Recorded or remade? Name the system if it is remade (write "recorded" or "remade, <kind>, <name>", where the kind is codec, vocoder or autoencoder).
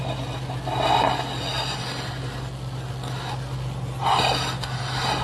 recorded